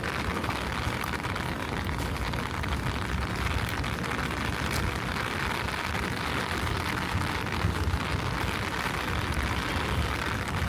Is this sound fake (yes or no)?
no